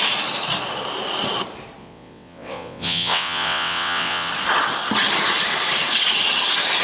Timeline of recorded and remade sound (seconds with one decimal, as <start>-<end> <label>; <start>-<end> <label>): 0.0-1.8 recorded; 1.8-4.3 remade; 4.3-6.8 recorded